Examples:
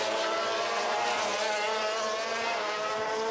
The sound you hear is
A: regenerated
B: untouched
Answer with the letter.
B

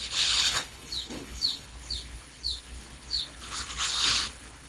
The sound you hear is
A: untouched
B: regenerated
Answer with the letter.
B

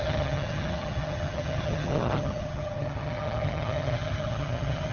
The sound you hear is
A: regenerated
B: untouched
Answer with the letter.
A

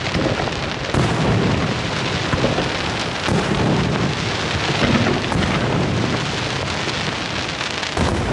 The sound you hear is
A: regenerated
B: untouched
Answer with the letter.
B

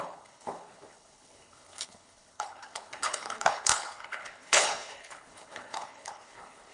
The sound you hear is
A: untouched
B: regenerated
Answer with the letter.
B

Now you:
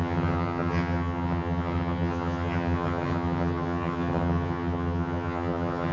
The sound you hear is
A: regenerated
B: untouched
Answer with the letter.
A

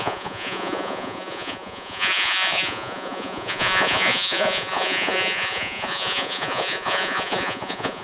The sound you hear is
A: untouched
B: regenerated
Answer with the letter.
B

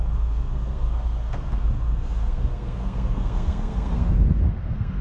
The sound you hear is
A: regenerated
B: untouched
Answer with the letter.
A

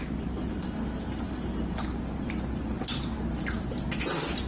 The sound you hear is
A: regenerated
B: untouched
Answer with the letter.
B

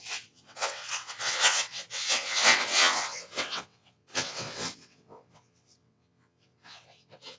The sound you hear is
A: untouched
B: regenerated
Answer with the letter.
B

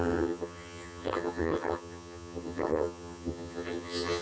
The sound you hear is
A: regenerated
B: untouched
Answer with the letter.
A